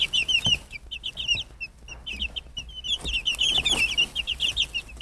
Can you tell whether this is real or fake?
real